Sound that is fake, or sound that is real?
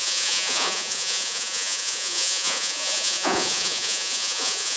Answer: fake